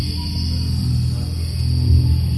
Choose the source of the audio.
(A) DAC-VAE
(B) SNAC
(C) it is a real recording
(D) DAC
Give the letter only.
C